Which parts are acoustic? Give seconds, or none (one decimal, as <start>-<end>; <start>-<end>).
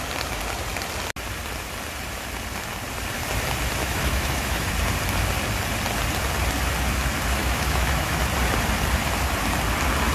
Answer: 0.0-3.8; 4.7-7.4; 8.2-10.1